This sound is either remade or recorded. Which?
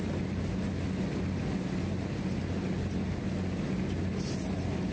recorded